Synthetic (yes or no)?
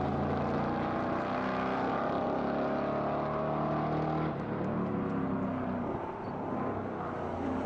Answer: no